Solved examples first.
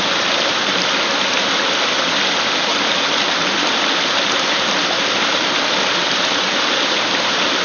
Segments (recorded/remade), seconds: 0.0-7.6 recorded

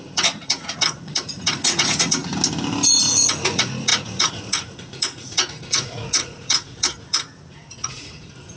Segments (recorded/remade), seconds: 0.0-2.2 remade; 2.2-2.9 recorded; 2.9-8.6 remade